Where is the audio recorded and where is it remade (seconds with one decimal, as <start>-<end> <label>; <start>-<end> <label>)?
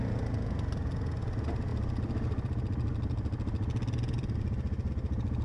0.0-5.4 recorded